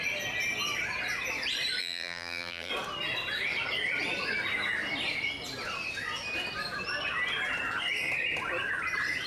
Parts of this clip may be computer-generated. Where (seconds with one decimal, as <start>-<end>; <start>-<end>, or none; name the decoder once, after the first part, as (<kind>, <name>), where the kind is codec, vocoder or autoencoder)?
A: 1.8-2.7 (vocoder, BigVGAN v2)